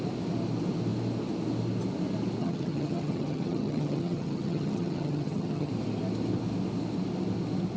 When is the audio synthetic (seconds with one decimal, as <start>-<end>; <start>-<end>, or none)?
2.4-5.7